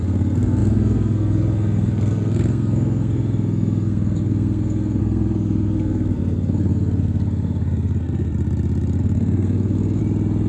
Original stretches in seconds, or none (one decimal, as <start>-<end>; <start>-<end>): 8.3-9.0; 10.0-10.5